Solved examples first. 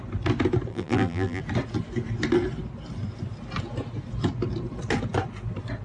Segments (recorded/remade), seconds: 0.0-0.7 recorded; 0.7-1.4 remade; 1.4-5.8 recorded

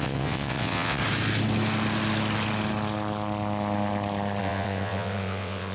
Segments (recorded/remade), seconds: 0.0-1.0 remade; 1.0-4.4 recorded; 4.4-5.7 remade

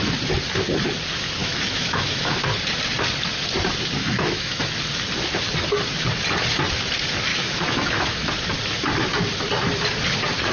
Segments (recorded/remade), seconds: 0.0-1.4 recorded; 1.4-2.4 remade; 2.4-4.0 recorded; 4.0-4.7 remade; 4.7-7.3 recorded; 7.3-8.3 remade; 8.3-10.5 recorded

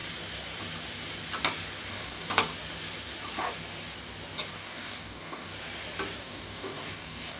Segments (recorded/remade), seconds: 0.0-1.9 recorded; 1.9-2.5 remade; 2.5-4.5 recorded; 4.5-5.5 remade; 5.5-6.2 recorded; 6.2-7.4 remade

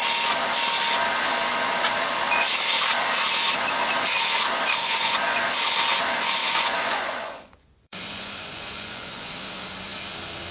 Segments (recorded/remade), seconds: 0.0-4.8 recorded; 4.8-5.4 remade; 5.4-6.4 recorded; 6.4-9.3 remade; 9.3-10.5 recorded